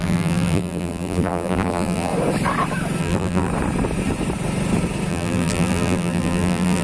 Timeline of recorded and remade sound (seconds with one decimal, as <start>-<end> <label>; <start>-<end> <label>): 0.0-2.1 remade; 2.1-3.0 recorded; 3.0-3.5 remade; 3.5-5.1 recorded; 5.1-6.8 remade

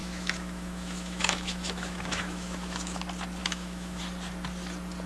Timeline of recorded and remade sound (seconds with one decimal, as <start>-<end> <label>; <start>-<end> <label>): 0.0-3.0 remade; 3.0-3.4 recorded; 3.4-4.0 remade; 4.0-5.1 recorded

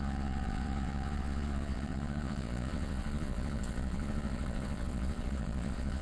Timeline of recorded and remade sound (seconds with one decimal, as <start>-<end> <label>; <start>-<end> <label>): 0.0-6.0 remade

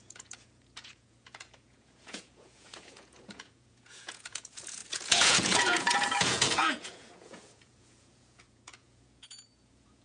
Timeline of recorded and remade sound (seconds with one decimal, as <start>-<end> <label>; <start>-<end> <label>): 0.0-10.0 remade